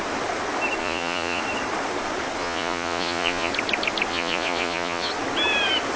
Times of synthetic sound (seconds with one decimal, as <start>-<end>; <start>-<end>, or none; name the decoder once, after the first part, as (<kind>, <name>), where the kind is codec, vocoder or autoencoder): 0.8-1.4 (vocoder, Vocos); 2.4-3.5; 4.1-5.1